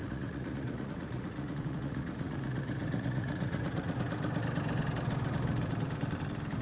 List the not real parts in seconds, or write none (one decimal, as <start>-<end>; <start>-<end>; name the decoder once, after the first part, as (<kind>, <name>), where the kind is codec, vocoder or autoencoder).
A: 0.0-4.0 (vocoder, Vocos)